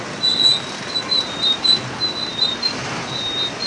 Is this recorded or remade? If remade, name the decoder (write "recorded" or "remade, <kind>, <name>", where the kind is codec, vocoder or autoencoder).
recorded